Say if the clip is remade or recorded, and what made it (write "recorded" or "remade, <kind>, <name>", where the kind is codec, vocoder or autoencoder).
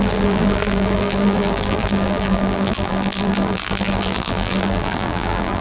remade, vocoder, BigVGAN v2